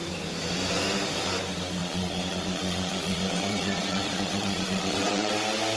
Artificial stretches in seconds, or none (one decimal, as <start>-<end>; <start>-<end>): 1.8-5.3